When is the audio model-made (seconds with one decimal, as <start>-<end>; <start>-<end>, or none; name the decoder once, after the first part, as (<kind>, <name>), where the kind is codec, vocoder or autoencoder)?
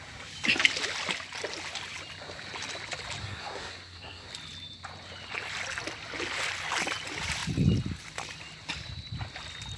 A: 3.2-4.3 (codec, SNAC)